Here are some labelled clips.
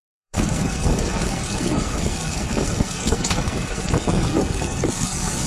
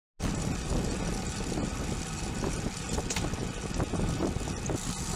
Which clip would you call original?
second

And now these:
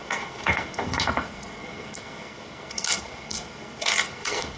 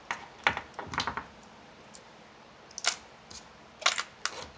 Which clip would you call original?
second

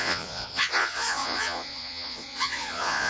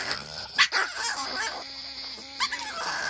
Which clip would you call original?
second